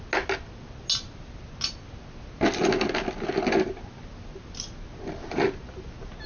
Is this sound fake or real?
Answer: real